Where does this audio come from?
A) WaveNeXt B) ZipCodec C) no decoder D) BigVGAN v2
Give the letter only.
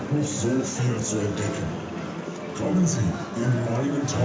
C